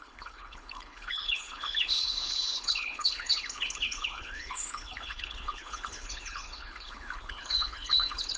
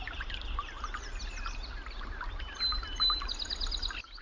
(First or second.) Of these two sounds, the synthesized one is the first